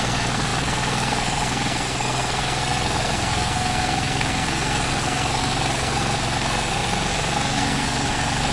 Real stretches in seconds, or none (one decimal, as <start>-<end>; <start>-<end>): none